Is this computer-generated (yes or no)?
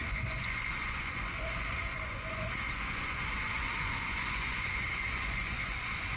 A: yes